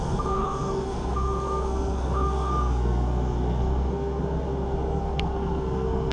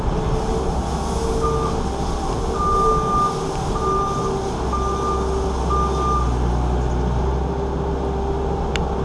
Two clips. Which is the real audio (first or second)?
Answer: second